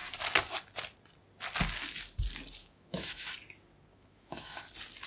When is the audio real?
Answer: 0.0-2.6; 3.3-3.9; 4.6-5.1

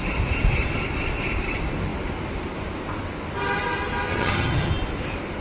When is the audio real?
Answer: 0.0-4.1; 4.7-5.4

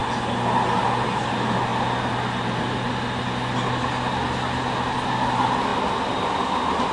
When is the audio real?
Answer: 0.0-6.9

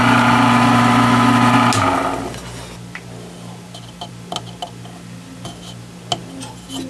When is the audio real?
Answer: 0.0-6.9

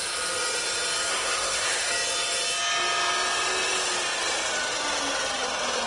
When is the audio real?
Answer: 0.0-1.1; 1.9-5.9

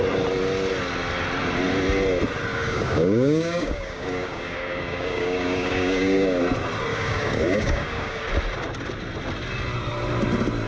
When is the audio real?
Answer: 0.0-2.5; 6.4-6.9; 8.2-10.7

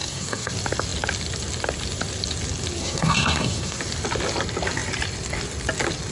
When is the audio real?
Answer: 0.5-2.8; 3.8-6.1